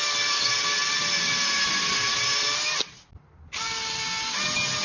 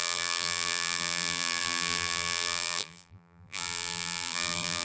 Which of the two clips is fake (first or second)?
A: second